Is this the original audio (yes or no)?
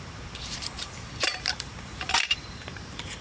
no